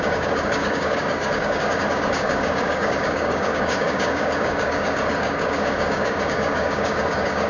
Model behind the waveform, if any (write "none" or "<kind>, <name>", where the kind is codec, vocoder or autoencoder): codec, DAC